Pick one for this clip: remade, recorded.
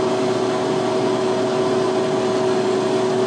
recorded